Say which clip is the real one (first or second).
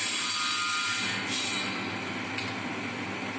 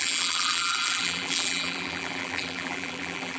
first